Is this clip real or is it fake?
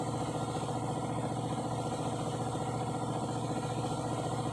real